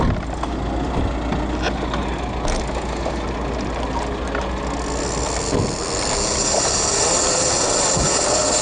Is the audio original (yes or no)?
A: yes